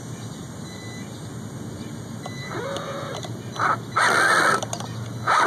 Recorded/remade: recorded